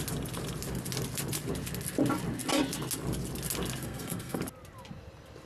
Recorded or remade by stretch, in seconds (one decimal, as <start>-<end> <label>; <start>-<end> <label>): 0.0-3.8 recorded; 3.8-4.4 remade; 4.4-5.5 recorded